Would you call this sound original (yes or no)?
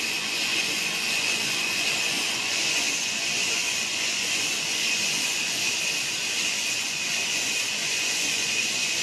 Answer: no